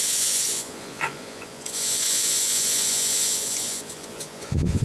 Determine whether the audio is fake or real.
fake